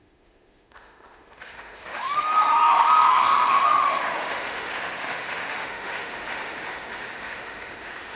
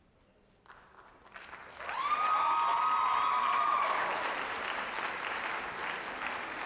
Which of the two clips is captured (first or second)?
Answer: second